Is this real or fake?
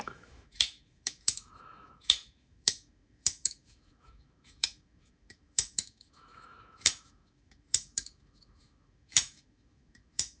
fake